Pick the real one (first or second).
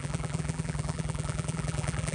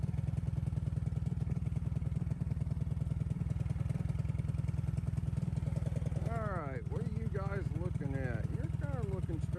second